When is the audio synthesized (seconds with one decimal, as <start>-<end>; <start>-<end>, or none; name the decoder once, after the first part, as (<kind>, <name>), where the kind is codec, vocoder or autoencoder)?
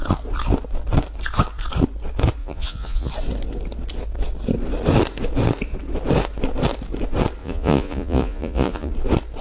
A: 2.4-3.1 (vocoder, Vocos); 7.4-8.9